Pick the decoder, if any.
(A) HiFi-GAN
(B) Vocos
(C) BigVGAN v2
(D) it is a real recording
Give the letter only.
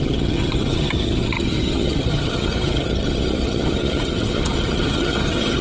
A